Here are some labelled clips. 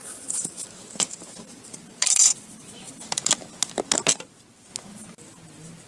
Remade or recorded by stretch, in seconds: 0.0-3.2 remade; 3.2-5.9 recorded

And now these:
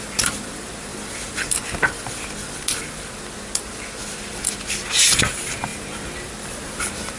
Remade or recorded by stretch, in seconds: 0.0-0.9 remade; 0.9-5.2 recorded; 5.2-7.2 remade

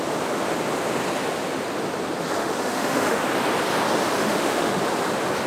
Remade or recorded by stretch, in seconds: 0.0-2.4 recorded; 2.4-3.2 remade; 3.2-4.2 recorded; 4.2-4.8 remade; 4.8-5.5 recorded

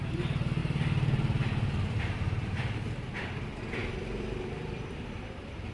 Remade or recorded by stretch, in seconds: 0.0-5.7 remade

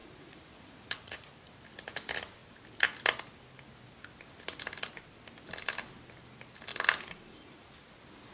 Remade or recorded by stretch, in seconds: 0.0-1.3 remade; 1.3-8.3 recorded

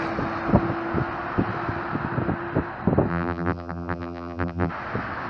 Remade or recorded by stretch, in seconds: 0.0-3.1 recorded; 3.1-4.7 remade; 4.7-5.3 recorded

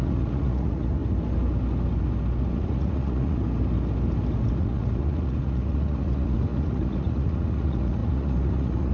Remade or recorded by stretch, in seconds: 0.0-1.0 remade; 1.0-2.4 recorded; 2.4-3.4 remade; 3.4-4.6 recorded; 4.6-8.9 remade

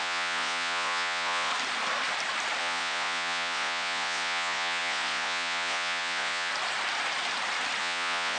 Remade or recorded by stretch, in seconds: 0.0-1.5 remade; 1.5-2.6 recorded; 2.6-6.5 remade; 6.5-7.8 recorded; 7.8-8.4 remade